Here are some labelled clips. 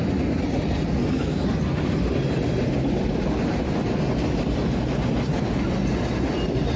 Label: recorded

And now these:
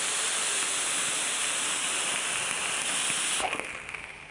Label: recorded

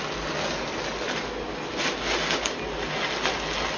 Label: recorded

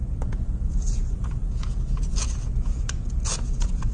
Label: remade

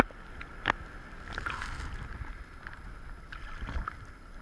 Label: recorded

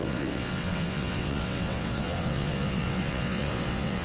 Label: remade